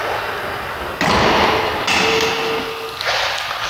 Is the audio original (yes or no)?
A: yes